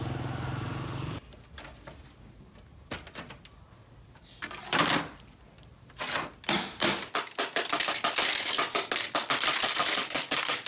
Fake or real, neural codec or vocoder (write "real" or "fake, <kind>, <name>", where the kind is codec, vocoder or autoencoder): real